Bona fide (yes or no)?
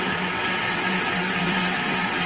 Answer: no